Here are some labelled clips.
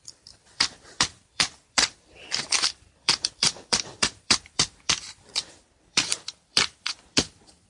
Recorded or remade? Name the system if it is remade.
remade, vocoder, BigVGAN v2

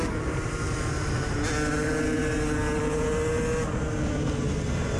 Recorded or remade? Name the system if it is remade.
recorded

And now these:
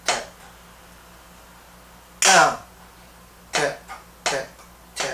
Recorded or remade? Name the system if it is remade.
recorded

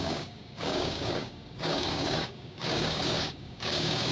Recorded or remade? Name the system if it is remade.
remade, codec, DAC